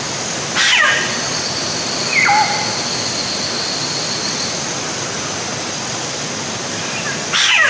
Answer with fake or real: real